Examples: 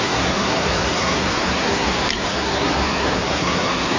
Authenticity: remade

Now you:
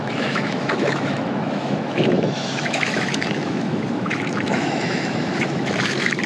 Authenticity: remade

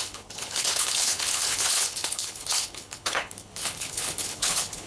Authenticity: remade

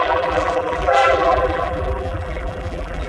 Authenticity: remade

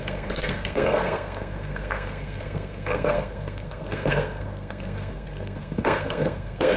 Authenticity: remade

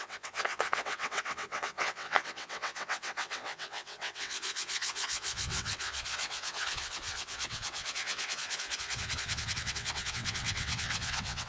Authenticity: remade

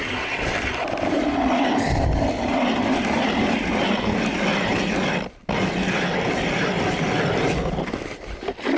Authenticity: recorded